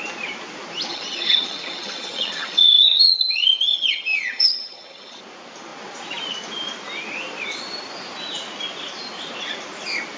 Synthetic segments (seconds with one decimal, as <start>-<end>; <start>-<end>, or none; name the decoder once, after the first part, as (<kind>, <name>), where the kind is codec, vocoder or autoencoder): 0.9-5.2 (vocoder, HiFi-GAN)

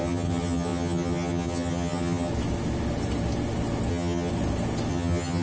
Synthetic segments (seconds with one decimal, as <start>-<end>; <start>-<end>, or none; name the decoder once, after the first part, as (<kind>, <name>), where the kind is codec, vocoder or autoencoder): 0.0-2.3 (vocoder, HiFi-GAN); 3.9-4.3; 4.9-5.4

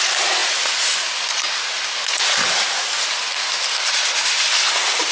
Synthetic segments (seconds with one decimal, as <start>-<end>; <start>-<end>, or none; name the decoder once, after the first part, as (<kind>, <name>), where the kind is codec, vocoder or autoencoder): none

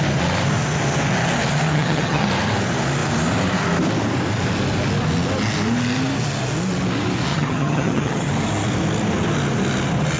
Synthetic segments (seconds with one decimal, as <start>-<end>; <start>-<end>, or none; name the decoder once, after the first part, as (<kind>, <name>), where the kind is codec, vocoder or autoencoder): 1.7-2.3 (vocoder, HiFi-GAN); 7.3-8.3

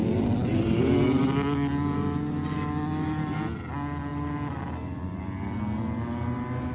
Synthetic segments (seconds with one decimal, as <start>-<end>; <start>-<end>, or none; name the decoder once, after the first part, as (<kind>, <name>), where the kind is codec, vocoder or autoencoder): none

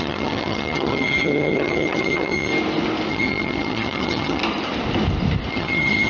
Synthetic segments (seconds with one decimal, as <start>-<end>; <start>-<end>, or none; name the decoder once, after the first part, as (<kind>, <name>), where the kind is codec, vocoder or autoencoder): 0.0-2.5 (vocoder, HiFi-GAN); 3.1-4.4; 5.5-6.1

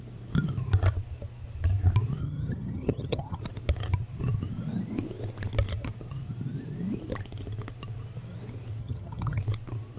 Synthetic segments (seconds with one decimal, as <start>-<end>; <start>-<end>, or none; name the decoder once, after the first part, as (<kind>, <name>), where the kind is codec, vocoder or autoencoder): 2.2-3.4 (vocoder, HiFi-GAN); 8.8-9.4